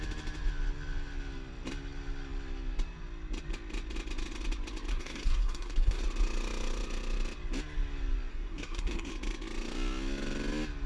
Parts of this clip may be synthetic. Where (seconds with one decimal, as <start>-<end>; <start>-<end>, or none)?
4.9-6.0; 8.3-9.1